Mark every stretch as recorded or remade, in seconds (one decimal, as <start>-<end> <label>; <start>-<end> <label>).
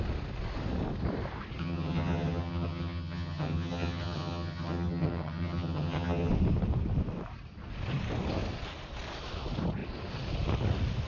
0.0-1.6 recorded; 1.6-6.3 remade; 6.3-11.1 recorded